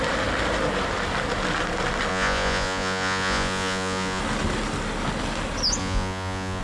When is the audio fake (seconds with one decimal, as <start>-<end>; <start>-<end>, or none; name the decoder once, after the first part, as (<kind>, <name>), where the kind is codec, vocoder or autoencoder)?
2.1-4.2 (vocoder, Vocos); 5.8-6.6